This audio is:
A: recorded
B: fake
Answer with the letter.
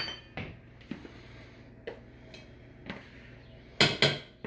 A